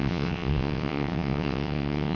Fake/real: fake